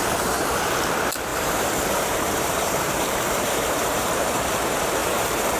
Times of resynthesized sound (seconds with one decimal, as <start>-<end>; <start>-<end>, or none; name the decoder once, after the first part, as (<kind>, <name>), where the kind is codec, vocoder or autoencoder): 1.3-4.1 (vocoder, BigVGAN v2); 5.0-5.6